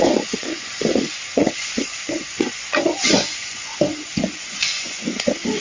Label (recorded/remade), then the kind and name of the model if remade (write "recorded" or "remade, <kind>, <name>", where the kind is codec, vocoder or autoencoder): remade, vocoder, Vocos